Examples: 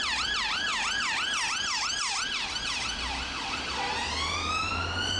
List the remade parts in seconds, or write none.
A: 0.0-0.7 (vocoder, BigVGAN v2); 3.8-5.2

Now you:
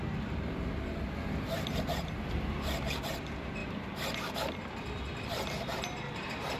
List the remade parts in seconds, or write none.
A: 3.6-6.6 (vocoder, BigVGAN v2)

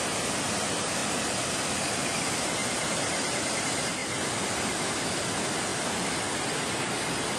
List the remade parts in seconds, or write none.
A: 1.0-2.2 (vocoder, BigVGAN v2); 2.6-3.6; 4.0-4.9; 5.7-6.4

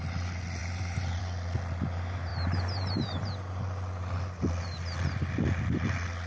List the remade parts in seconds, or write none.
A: 0.6-1.2 (vocoder, BigVGAN v2); 2.3-3.3

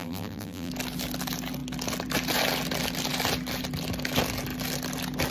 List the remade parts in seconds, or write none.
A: 0.0-0.7 (vocoder, BigVGAN v2)

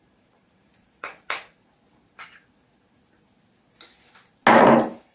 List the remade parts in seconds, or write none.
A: 0.0-1.5 (vocoder, BigVGAN v2); 4.6-5.1

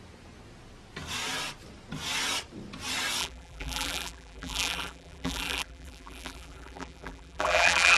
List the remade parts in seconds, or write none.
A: 3.2-8.0 (vocoder, BigVGAN v2)

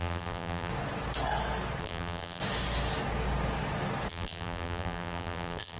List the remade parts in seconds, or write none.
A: 0.0-0.7 (vocoder, BigVGAN v2); 1.8-2.4; 4.1-5.8